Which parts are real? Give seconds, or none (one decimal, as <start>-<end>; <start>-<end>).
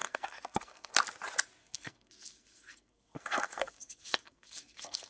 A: 0.9-1.6